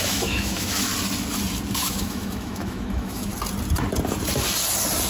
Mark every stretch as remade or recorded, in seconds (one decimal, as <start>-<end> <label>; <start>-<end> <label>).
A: 0.0-0.9 remade; 0.9-1.7 recorded; 1.7-3.3 remade; 3.3-5.1 recorded

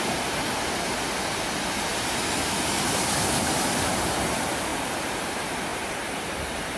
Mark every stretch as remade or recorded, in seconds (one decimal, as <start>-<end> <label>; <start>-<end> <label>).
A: 0.0-4.7 recorded; 4.7-5.2 remade; 5.2-5.7 recorded; 5.7-6.8 remade

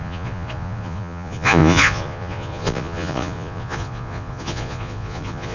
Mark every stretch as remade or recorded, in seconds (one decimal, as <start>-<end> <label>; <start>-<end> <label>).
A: 0.0-5.5 remade

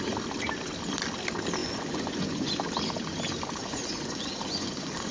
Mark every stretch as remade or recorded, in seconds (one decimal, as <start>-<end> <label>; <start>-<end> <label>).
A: 0.0-1.6 recorded; 1.6-2.5 remade; 2.5-3.6 recorded; 3.6-5.1 remade

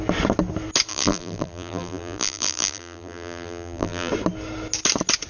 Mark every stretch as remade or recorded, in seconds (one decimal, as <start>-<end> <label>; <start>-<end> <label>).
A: 0.0-0.9 recorded; 0.9-4.1 remade; 4.1-5.3 recorded

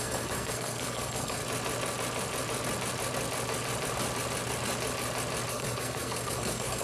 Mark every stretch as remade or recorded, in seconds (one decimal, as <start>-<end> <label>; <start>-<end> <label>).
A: 0.0-1.4 remade; 1.4-5.5 recorded; 5.5-6.8 remade

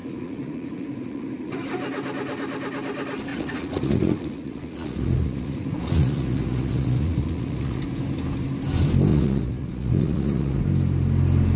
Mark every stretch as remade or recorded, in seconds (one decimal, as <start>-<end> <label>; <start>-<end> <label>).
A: 0.0-1.5 remade; 1.5-3.3 recorded; 3.3-7.8 remade; 7.8-9.1 recorded; 9.1-10.6 remade; 10.6-11.6 recorded

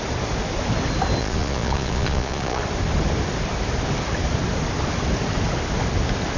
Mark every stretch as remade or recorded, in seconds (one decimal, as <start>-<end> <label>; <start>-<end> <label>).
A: 0.0-1.2 recorded; 1.2-2.6 remade; 2.6-6.4 recorded